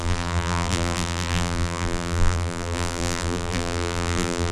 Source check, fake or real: fake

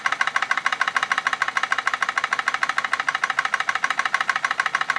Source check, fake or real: fake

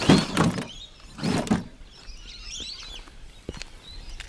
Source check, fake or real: real